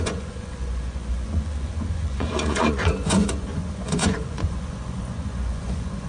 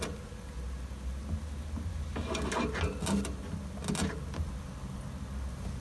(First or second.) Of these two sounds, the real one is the second